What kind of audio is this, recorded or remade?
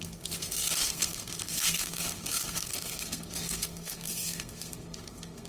remade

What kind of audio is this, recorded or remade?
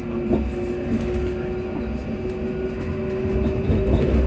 recorded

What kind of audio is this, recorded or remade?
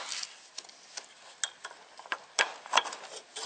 recorded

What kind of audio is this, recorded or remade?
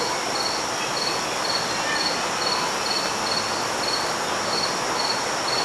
recorded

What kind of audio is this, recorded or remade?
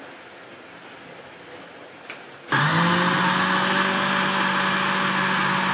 recorded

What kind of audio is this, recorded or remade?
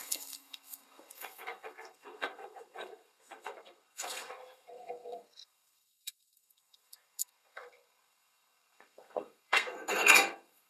remade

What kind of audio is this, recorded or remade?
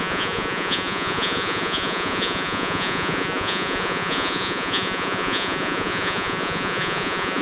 remade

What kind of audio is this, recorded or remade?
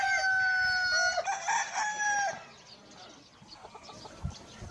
recorded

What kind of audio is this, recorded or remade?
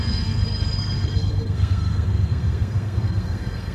remade